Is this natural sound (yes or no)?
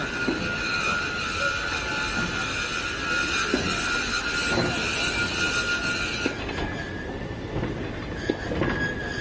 yes